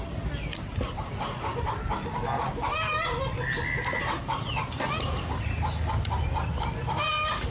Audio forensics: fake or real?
real